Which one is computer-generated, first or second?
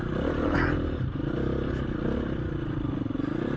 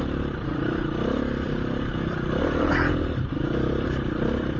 second